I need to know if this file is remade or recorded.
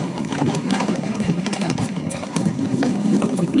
remade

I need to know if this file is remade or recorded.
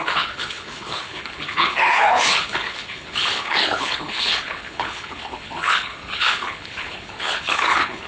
remade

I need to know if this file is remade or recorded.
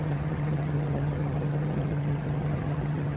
remade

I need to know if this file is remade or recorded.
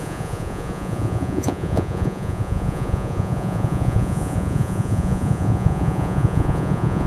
remade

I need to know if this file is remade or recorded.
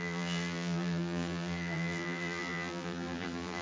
remade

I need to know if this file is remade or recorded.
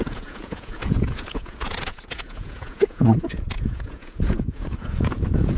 remade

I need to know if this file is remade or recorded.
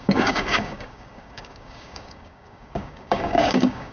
remade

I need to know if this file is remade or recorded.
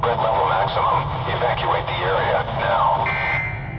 recorded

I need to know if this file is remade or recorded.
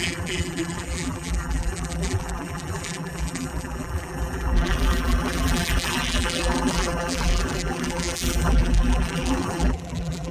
remade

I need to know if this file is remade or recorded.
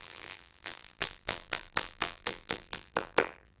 remade